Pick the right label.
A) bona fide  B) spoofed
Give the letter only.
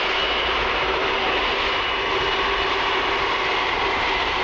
A